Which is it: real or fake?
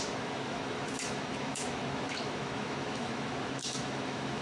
fake